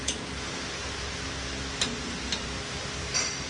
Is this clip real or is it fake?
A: real